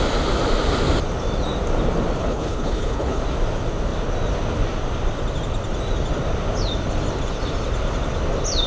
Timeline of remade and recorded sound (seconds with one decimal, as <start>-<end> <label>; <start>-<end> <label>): 0.0-2.2 recorded; 2.2-3.2 remade; 3.2-8.7 recorded